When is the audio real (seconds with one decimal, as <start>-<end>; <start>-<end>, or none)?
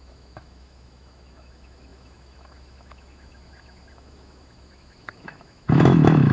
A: none